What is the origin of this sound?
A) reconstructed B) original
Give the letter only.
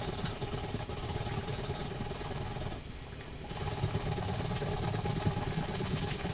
B